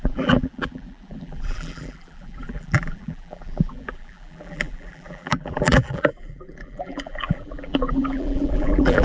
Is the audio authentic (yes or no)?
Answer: no